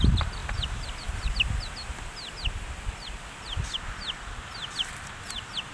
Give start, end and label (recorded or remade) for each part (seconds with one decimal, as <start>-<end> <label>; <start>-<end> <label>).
0.0-5.7 recorded